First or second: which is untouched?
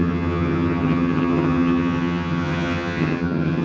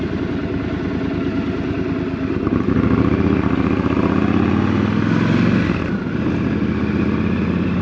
second